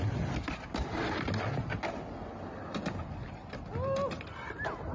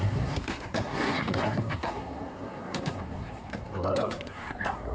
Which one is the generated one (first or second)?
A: second